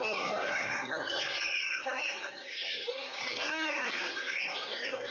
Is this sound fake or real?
fake